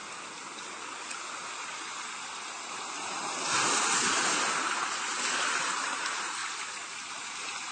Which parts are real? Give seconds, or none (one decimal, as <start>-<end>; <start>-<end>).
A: 0.0-7.7